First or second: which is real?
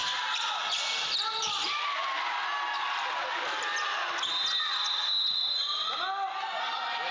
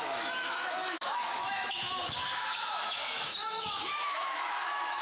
first